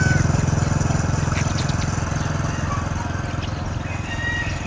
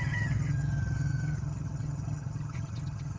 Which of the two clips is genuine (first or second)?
first